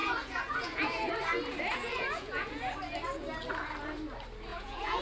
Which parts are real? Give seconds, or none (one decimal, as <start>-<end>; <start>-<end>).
1.1-1.7; 2.7-4.5